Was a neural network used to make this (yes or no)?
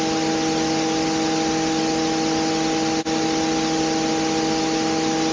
no